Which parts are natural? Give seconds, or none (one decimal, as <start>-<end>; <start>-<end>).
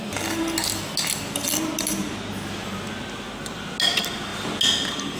0.0-5.2